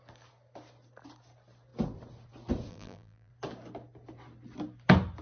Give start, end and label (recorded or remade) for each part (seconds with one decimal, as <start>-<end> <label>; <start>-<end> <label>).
0.0-2.7 recorded; 2.7-3.3 remade; 3.3-5.2 recorded